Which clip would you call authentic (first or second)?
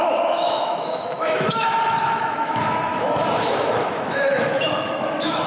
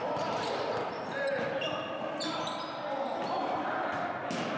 second